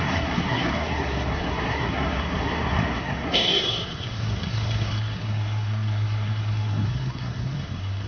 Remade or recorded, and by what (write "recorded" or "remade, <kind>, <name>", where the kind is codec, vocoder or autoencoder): remade, codec, SNAC